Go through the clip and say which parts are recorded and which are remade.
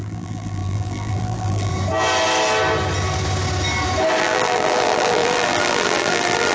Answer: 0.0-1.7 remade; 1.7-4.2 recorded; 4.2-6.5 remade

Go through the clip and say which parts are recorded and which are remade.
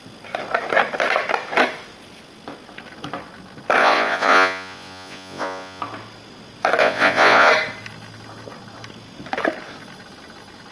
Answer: 0.0-3.8 recorded; 3.8-5.8 remade; 5.8-6.8 recorded; 6.8-7.5 remade; 7.5-10.7 recorded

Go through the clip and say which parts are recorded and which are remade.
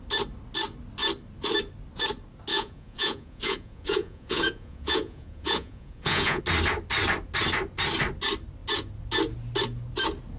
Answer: 0.0-2.5 recorded; 2.5-6.4 remade; 6.4-10.4 recorded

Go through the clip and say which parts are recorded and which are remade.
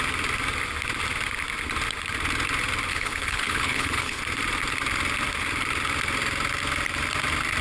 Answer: 0.0-2.9 recorded; 2.9-4.2 remade; 4.2-7.6 recorded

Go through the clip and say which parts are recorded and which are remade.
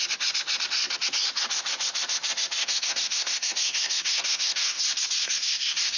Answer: 0.0-2.6 recorded; 2.6-4.8 remade; 4.8-5.2 recorded; 5.2-6.0 remade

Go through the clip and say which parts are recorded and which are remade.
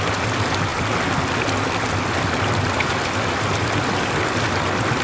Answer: 0.0-5.0 recorded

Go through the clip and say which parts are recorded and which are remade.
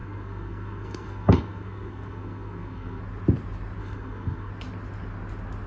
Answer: 0.0-3.0 remade; 3.0-3.8 recorded; 3.8-4.5 remade; 4.5-5.7 recorded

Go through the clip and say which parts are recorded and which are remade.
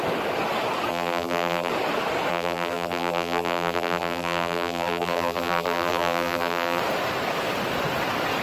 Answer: 0.0-0.9 recorded; 0.9-1.7 remade; 1.7-2.3 recorded; 2.3-6.8 remade; 6.8-8.4 recorded